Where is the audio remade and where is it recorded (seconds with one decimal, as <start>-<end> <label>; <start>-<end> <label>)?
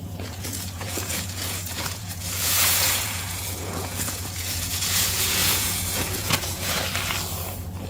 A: 0.0-6.8 remade; 6.8-7.9 recorded